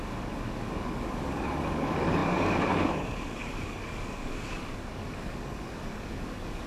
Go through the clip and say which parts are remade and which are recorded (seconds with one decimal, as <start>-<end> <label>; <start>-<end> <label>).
0.0-6.7 remade